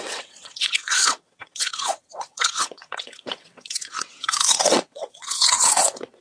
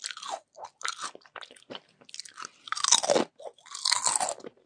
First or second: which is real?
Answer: second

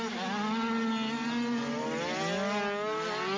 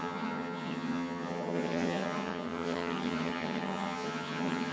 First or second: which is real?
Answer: first